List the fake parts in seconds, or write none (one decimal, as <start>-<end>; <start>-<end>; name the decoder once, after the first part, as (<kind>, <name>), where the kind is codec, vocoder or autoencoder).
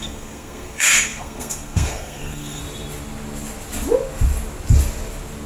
0.0-2.6 (codec, SNAC)